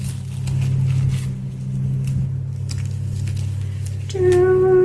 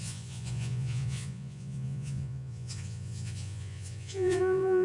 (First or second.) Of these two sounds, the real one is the first